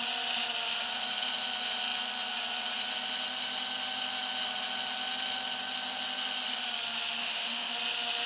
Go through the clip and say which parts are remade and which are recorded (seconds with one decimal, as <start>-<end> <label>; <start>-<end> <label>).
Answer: 0.0-7.2 recorded; 7.2-7.7 remade; 7.7-8.3 recorded